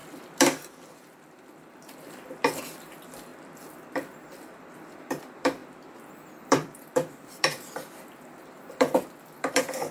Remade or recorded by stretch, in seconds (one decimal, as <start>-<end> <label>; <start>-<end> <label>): 0.0-3.3 remade; 3.3-3.9 recorded; 3.9-5.6 remade; 5.6-6.4 recorded; 6.4-9.9 remade